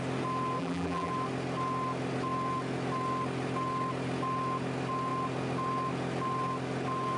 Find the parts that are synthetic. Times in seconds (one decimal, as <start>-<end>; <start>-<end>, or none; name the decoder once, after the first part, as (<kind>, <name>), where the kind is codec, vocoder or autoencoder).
0.6-1.1 (vocoder, BigVGAN v2)